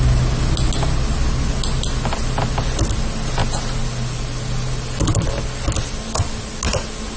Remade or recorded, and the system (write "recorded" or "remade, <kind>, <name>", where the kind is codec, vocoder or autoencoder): recorded